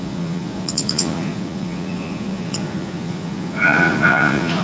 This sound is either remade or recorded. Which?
remade